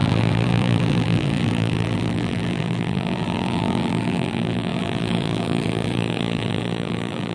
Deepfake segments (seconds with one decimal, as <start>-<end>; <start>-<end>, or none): 0.0-7.3